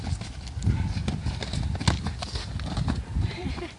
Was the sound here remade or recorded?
recorded